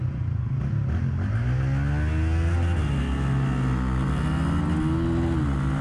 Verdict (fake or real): real